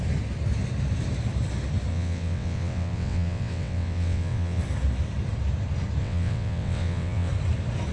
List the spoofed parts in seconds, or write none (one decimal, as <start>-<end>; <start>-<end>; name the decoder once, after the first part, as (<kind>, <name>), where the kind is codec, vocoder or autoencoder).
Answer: 1.9-4.6 (vocoder, WaveNeXt); 6.0-7.3